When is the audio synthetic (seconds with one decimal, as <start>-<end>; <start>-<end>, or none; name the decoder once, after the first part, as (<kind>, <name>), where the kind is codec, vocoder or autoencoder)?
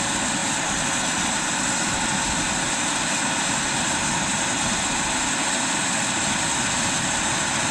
none